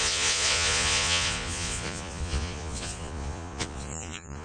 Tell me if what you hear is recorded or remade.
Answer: remade